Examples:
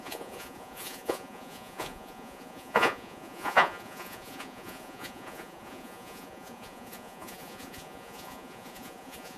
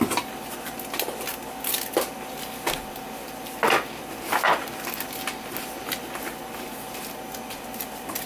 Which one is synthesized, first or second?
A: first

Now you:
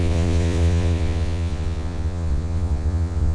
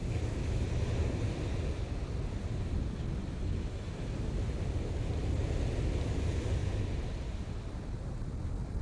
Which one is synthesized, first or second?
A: first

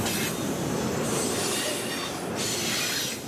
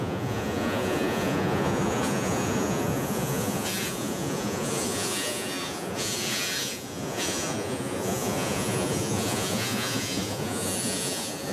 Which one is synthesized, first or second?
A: second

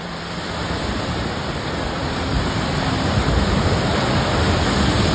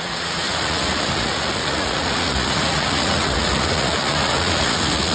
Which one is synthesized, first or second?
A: second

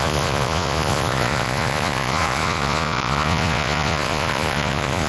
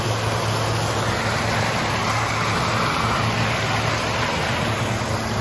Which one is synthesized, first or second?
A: first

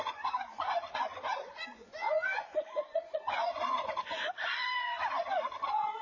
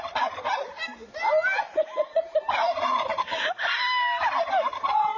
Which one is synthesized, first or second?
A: first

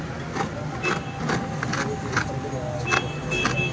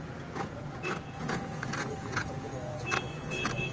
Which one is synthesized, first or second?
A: second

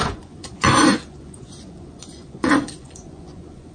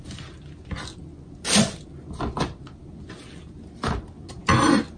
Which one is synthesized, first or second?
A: first